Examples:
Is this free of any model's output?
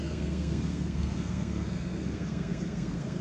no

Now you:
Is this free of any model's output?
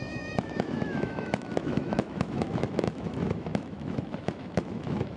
no